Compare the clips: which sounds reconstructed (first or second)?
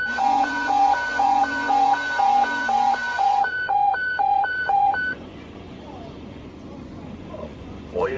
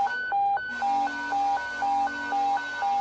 first